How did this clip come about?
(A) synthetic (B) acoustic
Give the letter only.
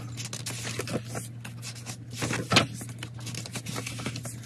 B